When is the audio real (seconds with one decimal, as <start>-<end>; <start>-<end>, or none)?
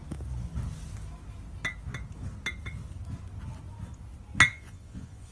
0.0-4.5